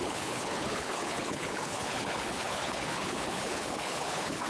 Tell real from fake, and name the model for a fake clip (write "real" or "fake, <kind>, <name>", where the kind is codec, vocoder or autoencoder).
fake, codec, HILCodec